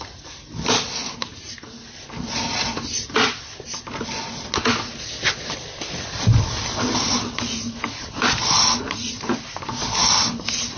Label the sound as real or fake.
real